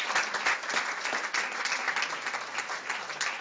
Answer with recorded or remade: recorded